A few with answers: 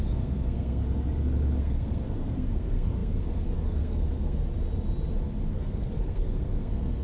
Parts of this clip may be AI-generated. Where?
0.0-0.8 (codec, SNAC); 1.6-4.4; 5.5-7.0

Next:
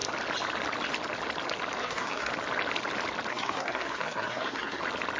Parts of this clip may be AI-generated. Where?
1.8-2.3 (codec, SNAC); 3.3-4.8

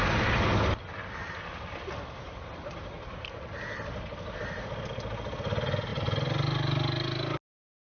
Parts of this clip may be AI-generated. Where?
none

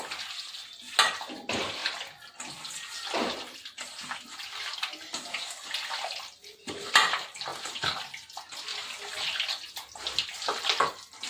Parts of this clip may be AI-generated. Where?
none

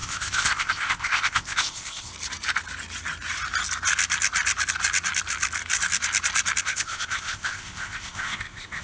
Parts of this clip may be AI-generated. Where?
0.0-2.1 (codec, ZipCodec); 6.6-8.8

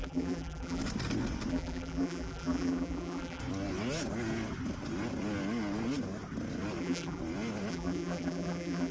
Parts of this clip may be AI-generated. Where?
0.0-0.8 (vocoder, BigVGAN v2); 1.5-3.4; 6.8-7.2; 7.7-8.9

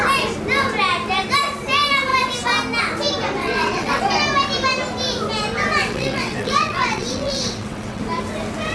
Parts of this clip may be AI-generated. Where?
3.4-4.0 (vocoder, WaveNeXt); 5.8-8.0

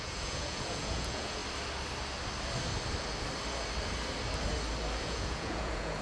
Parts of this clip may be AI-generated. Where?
0.0-1.4 (vocoder, Vocos); 5.0-6.0